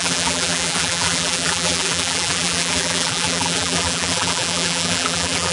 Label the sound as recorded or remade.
remade